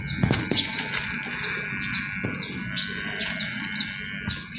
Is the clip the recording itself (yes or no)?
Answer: yes